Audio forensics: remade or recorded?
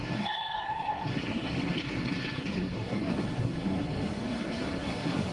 remade